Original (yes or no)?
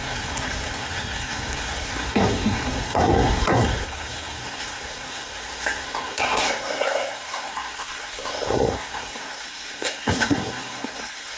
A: no